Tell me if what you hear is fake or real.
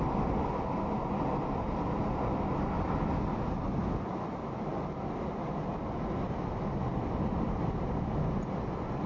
real